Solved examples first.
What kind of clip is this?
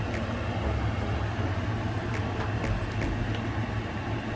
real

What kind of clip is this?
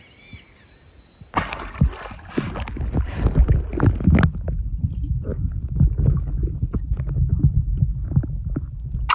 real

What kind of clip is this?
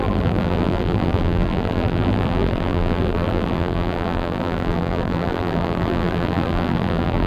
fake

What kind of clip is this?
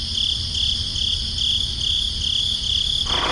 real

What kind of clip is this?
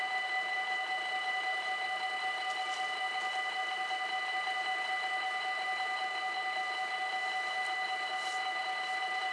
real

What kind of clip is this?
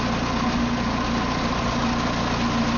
real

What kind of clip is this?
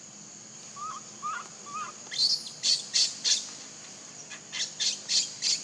real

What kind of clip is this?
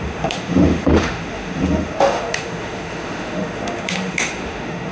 fake